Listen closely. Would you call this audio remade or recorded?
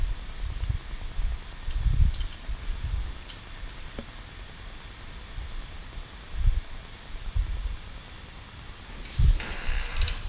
recorded